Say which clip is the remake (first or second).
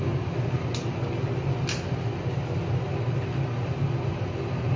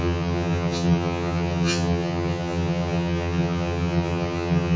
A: second